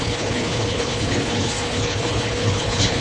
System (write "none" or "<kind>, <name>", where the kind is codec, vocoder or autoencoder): codec, HILCodec